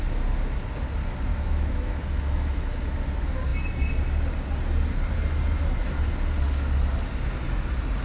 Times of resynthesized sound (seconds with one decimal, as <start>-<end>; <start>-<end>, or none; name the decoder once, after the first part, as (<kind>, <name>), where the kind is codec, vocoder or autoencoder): 1.3-2.9 (autoencoder, DAC-VAE)